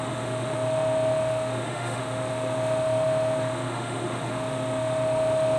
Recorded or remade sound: remade